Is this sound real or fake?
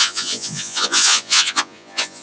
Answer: fake